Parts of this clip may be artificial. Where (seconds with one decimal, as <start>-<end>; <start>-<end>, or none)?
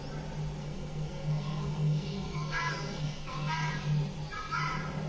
0.6-3.7